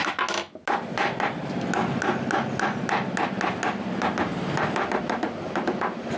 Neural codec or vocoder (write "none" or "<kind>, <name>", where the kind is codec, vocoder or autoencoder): none